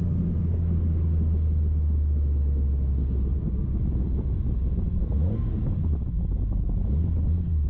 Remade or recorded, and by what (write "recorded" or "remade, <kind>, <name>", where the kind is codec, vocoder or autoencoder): recorded